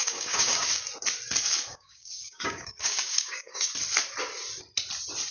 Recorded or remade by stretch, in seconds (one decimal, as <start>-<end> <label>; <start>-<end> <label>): 0.0-0.7 remade; 0.7-1.7 recorded; 1.7-3.7 remade; 3.7-5.3 recorded